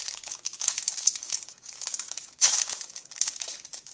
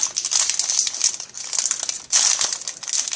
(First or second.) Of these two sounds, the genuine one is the second